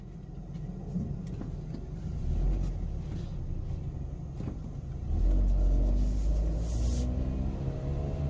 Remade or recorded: recorded